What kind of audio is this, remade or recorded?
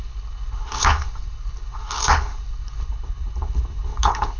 remade